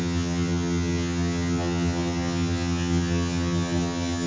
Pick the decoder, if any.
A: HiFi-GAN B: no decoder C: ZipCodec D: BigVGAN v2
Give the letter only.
A